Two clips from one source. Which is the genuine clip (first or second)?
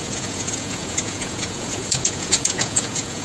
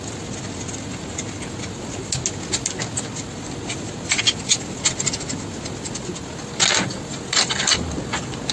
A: second